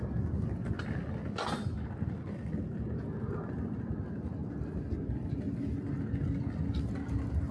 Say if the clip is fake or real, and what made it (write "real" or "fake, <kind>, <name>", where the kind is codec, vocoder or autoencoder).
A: real